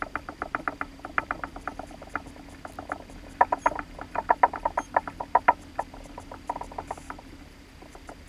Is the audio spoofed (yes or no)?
no